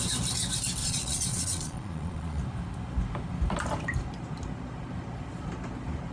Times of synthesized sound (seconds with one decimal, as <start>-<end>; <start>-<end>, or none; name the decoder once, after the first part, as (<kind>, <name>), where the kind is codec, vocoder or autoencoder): 0.8-2.4 (vocoder, Vocos)